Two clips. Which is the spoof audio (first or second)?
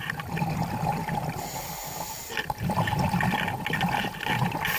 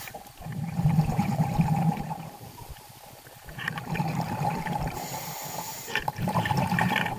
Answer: second